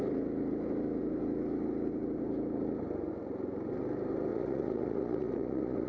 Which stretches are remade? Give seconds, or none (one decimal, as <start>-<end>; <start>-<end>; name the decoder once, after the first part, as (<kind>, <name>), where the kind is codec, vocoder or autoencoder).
4.3-5.9 (vocoder, Vocos)